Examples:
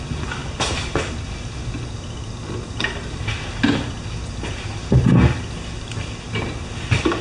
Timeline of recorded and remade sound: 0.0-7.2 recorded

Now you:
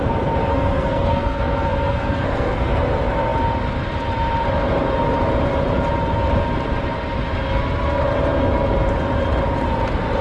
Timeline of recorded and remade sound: 0.0-0.5 recorded; 0.5-2.8 remade; 2.8-10.2 recorded

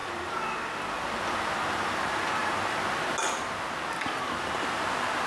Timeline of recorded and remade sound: 0.0-5.3 recorded

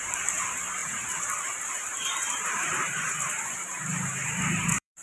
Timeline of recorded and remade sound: 0.0-5.0 remade

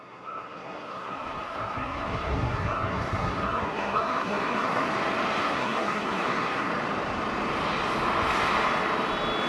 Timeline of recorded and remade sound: 0.0-4.8 remade; 4.8-5.4 recorded; 5.4-6.7 remade; 6.7-9.5 recorded

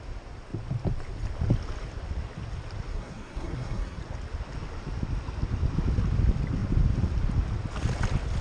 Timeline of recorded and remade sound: 0.0-2.9 recorded; 2.9-4.0 remade; 4.0-8.4 recorded

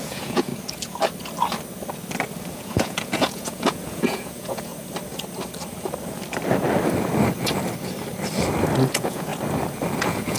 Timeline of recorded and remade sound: 0.0-0.5 remade; 0.5-2.5 recorded; 2.5-4.7 remade; 4.7-8.9 recorded; 8.9-9.3 remade; 9.3-10.0 recorded; 10.0-10.4 remade

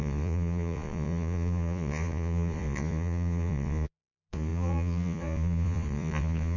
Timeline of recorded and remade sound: 0.0-6.6 remade